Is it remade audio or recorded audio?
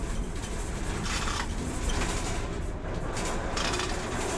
recorded